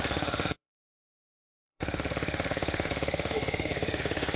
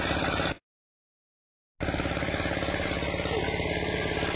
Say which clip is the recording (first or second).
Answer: second